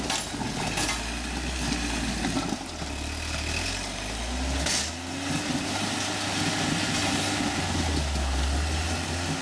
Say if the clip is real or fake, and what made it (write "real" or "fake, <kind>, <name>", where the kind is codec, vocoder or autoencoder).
real